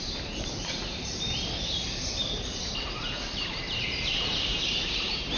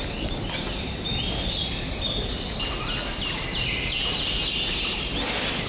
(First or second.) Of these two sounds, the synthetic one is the first